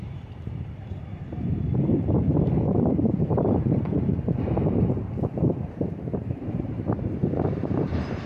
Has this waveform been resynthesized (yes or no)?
yes